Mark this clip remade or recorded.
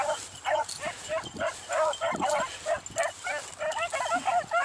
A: recorded